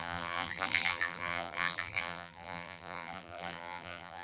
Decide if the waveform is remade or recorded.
remade